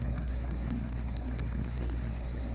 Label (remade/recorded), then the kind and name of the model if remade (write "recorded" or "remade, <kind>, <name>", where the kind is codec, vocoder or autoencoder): remade, codec, SNAC